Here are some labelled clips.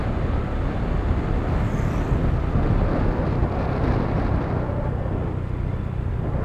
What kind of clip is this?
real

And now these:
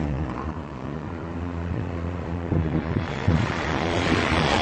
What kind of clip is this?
fake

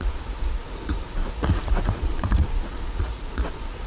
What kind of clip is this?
fake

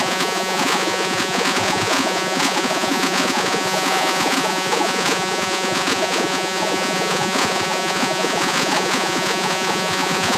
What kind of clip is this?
fake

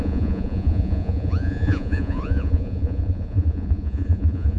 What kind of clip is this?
fake